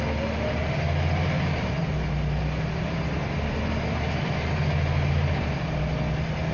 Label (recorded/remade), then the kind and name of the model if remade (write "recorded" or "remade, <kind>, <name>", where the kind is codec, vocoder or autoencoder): recorded